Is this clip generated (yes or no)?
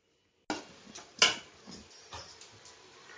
no